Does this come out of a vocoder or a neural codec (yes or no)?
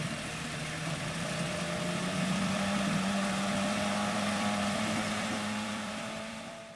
yes